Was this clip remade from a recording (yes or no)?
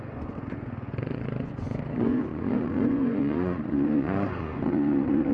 yes